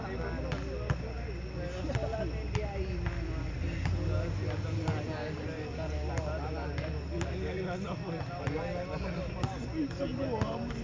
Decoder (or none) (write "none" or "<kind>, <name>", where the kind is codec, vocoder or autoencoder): none